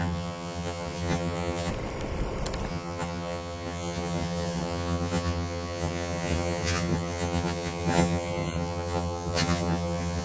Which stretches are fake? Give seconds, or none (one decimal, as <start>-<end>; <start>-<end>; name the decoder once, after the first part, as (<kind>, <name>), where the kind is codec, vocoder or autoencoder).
0.0-1.7 (vocoder, HiFi-GAN); 2.7-10.2